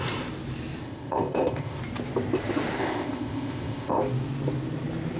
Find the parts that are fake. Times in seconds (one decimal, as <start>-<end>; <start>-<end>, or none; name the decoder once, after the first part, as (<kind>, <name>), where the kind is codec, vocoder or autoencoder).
0.8-1.8 (codec, ZipCodec); 2.8-4.0